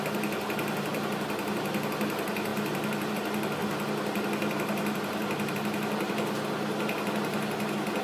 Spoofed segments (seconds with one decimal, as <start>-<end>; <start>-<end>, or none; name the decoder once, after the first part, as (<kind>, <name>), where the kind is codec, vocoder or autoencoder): none